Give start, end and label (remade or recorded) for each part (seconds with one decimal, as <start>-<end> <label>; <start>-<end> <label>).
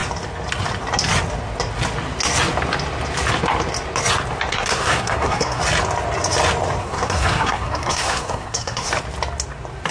0.0-4.5 recorded; 4.5-5.6 remade; 5.6-6.8 recorded; 6.8-8.9 remade; 8.9-9.9 recorded